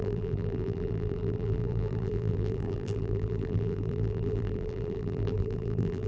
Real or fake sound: fake